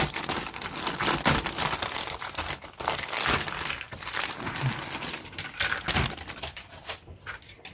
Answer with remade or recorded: recorded